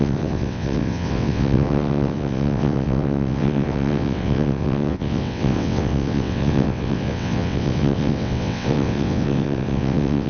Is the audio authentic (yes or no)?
no